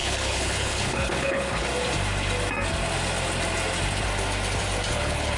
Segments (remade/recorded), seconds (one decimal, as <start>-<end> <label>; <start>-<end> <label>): 0.0-1.7 remade; 1.7-4.9 recorded; 4.9-5.4 remade